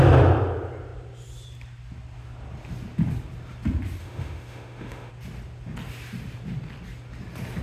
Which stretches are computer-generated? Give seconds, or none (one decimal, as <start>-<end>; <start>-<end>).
4.0-5.1